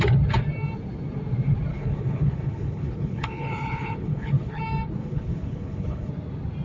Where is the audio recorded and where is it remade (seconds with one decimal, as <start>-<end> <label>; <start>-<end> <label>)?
0.0-1.7 recorded; 1.7-4.6 remade; 4.6-5.0 recorded; 5.0-6.1 remade; 6.1-6.6 recorded